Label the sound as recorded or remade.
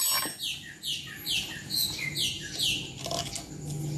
recorded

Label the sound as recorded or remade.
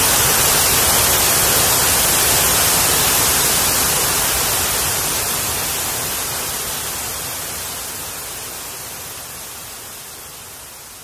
recorded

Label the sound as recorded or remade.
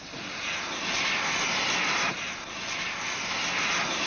recorded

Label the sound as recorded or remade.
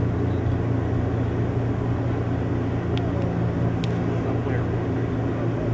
recorded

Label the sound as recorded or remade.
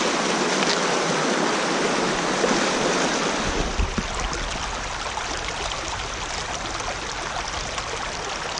recorded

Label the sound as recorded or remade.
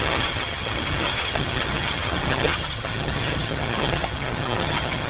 remade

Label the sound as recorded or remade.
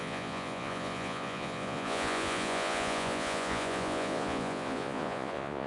remade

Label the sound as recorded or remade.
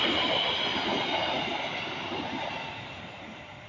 recorded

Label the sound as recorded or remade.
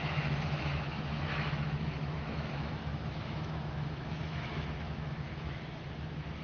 remade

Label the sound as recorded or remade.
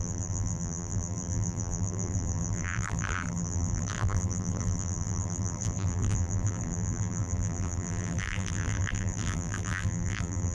remade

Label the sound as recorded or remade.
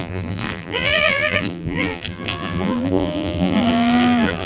remade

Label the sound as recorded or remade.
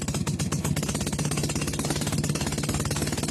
recorded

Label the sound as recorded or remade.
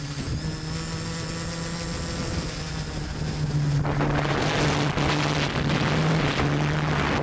recorded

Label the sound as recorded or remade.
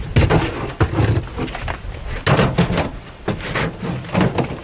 recorded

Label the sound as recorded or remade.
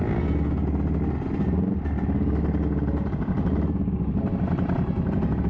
recorded